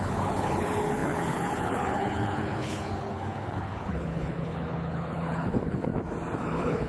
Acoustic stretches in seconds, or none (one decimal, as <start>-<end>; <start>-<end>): 5.9-6.4